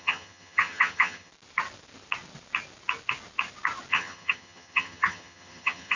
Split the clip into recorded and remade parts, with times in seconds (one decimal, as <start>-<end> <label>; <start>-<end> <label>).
0.0-1.3 remade; 1.3-3.9 recorded; 3.9-6.0 remade